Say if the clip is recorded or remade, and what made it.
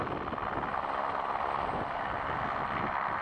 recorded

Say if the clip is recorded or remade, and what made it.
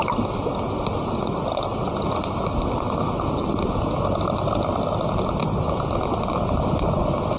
recorded